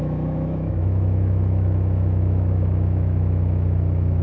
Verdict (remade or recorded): remade